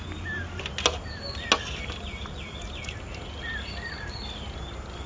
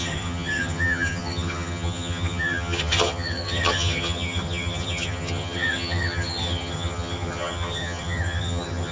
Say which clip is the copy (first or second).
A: second